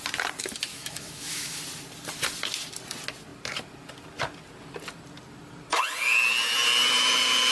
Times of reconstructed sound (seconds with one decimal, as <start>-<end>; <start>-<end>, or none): 0.7-1.6